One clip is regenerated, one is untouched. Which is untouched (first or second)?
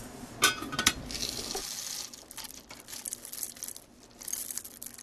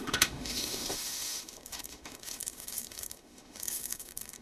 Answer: first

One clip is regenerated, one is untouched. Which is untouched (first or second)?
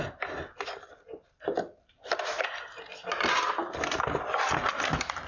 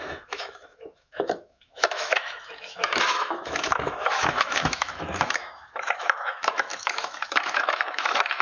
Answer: first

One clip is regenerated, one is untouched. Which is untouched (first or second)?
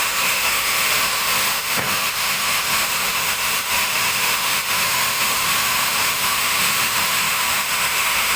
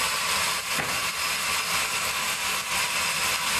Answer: second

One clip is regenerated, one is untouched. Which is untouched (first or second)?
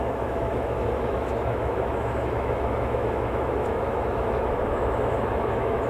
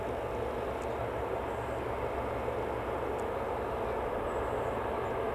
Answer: second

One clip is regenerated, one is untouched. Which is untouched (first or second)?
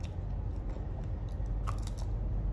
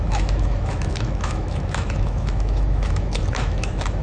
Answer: first